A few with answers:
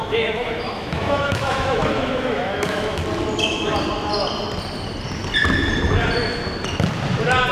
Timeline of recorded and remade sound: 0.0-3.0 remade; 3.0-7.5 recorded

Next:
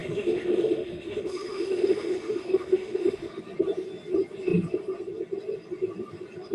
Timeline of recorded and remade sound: 0.0-3.3 remade; 3.3-6.5 recorded

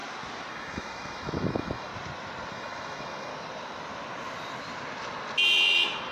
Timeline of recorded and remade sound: 0.0-0.5 recorded; 0.5-1.9 remade; 1.9-2.5 recorded; 2.5-3.3 remade; 3.3-6.1 recorded

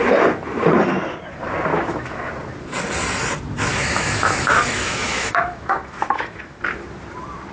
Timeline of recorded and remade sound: 0.0-1.7 recorded; 1.7-2.3 remade; 2.3-3.7 recorded; 3.7-6.6 remade; 6.6-7.5 recorded

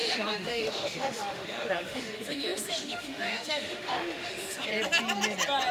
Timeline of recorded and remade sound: 0.0-4.7 remade; 4.7-5.7 recorded

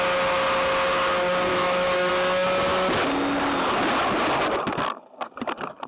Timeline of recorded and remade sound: 0.0-1.5 recorded; 1.5-2.1 remade; 2.1-5.9 recorded

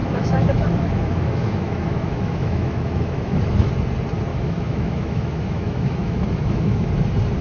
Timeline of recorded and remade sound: 0.0-3.7 remade; 3.7-4.3 recorded; 4.3-6.9 remade; 6.9-7.4 recorded

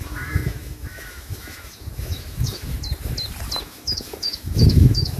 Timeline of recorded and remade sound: 0.0-2.7 remade; 2.7-3.6 recorded; 3.6-5.2 remade